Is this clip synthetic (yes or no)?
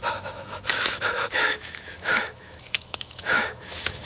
yes